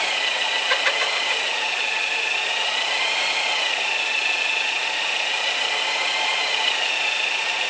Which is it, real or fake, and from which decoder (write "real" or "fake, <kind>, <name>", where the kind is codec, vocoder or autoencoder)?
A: real